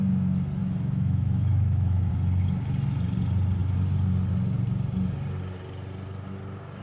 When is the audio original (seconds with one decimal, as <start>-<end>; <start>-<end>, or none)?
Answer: 0.0-0.6; 2.1-6.8